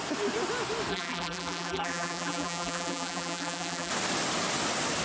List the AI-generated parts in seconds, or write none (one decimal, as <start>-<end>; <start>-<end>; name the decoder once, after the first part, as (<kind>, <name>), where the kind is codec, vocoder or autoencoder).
0.9-3.9 (vocoder, BigVGAN v2)